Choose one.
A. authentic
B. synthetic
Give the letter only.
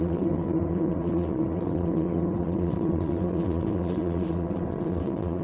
B